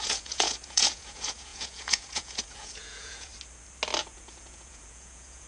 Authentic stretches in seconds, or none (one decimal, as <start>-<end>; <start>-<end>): 3.3-4.0